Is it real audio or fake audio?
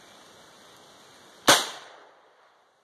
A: real